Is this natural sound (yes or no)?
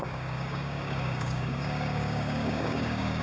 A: no